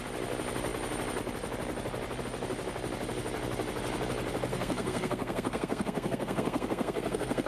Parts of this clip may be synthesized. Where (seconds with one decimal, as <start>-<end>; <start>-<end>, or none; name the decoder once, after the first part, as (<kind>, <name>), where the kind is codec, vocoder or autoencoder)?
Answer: 4.5-7.5 (codec, SNAC)